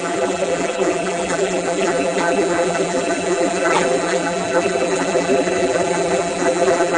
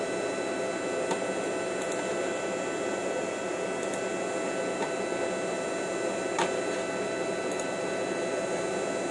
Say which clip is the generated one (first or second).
first